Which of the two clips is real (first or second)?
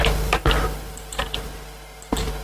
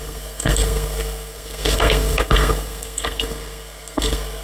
first